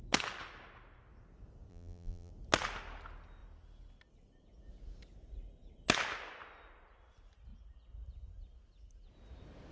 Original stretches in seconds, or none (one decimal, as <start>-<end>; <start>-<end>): 0.0-1.7; 2.3-9.7